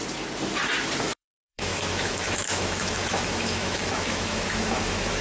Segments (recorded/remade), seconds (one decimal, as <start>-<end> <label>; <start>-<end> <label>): 0.0-1.0 recorded; 1.0-5.2 remade